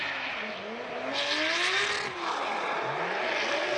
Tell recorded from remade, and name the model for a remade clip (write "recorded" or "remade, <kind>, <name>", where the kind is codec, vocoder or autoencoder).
recorded